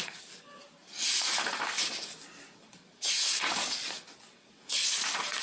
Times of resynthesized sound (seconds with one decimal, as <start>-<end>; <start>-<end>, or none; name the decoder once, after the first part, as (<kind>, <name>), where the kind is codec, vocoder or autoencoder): 0.0-4.8 (codec, DAC)